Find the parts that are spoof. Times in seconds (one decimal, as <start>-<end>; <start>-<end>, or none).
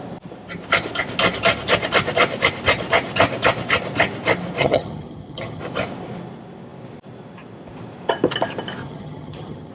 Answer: 4.6-5.6; 8.8-9.7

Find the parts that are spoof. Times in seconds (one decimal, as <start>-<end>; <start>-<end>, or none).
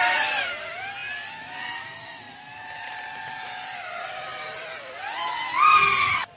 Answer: none